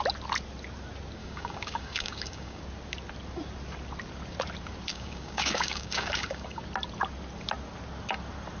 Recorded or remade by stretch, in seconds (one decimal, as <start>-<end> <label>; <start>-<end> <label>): 0.0-1.2 recorded; 1.2-2.6 remade; 2.6-4.9 recorded; 4.9-6.6 remade; 6.6-8.6 recorded